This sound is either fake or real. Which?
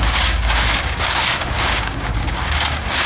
fake